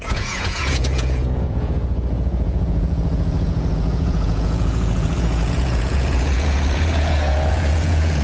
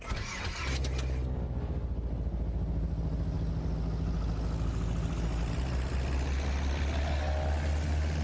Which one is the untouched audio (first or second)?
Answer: second